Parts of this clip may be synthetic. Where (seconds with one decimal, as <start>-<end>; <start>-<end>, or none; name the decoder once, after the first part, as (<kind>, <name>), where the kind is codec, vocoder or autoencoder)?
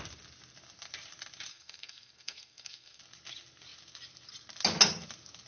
1.5-3.0 (codec, SNAC)